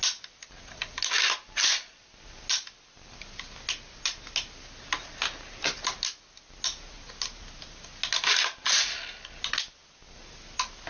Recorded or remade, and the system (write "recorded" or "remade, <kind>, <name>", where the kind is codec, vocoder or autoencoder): recorded